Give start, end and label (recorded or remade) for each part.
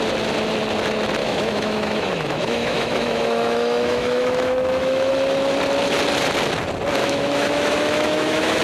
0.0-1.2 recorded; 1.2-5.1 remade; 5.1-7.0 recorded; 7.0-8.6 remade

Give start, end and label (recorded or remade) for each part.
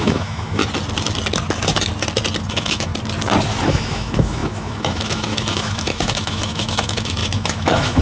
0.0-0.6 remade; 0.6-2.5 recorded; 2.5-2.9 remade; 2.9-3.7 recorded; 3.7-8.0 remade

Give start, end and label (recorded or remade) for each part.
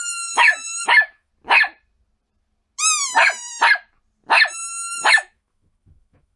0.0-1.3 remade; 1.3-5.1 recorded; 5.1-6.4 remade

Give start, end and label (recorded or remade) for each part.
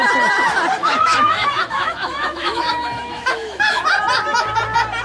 0.0-0.8 recorded; 0.8-3.8 remade; 3.8-5.0 recorded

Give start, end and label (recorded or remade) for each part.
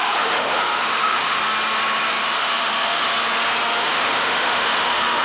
0.0-1.4 remade; 1.4-2.1 recorded; 2.1-3.1 remade; 3.1-3.8 recorded; 3.8-5.2 remade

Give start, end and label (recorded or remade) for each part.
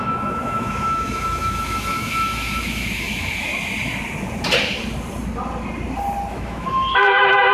0.0-3.5 remade; 3.5-6.3 recorded; 6.3-7.5 remade